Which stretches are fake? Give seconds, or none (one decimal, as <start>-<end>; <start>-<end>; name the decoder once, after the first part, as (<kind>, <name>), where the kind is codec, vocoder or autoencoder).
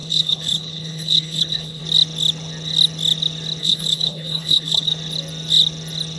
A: 0.0-1.8 (codec, HILCodec); 3.6-4.9